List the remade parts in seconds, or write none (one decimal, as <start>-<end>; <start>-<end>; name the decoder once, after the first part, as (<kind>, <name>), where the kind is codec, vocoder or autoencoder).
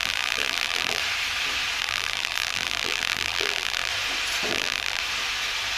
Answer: 0.0-1.0 (vocoder, BigVGAN v2); 1.8-3.9; 4.5-5.0